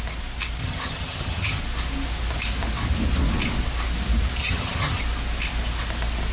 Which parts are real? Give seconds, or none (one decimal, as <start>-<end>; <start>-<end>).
0.0-0.6; 1.6-4.4; 5.0-6.3